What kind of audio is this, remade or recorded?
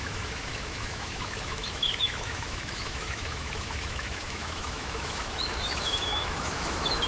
remade